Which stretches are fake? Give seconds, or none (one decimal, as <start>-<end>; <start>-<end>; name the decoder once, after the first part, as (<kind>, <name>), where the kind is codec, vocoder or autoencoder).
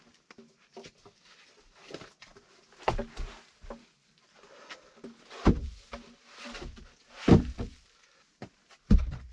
none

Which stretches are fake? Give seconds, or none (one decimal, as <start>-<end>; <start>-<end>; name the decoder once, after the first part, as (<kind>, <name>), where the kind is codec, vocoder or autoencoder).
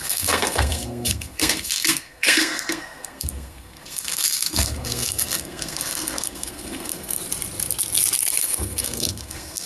0.0-7.2 (codec, SNAC); 8.4-9.7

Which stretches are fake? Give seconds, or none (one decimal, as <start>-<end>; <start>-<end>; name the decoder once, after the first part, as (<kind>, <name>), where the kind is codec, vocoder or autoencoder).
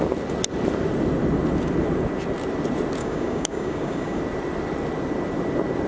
3.0-4.2 (codec, DAC)